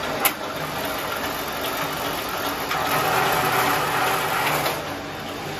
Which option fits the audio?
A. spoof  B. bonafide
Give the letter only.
B